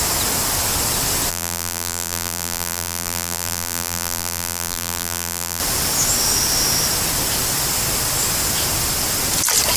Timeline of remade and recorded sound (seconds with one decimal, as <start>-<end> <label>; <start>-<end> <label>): 0.0-1.3 recorded; 1.3-5.6 remade; 5.6-9.8 recorded

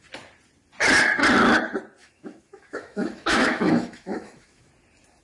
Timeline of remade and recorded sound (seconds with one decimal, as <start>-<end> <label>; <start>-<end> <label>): 0.0-2.0 recorded; 2.0-4.7 remade; 4.7-5.2 recorded